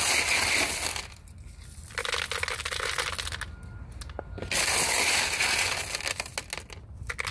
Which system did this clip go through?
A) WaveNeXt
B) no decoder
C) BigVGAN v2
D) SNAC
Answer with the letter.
B